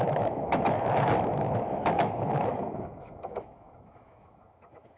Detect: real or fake fake